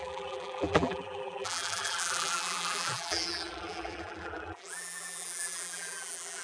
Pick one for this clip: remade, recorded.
remade